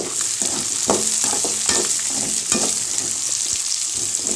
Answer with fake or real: real